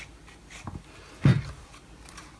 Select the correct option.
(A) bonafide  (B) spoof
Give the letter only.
A